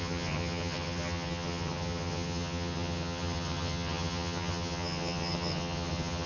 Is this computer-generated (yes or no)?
yes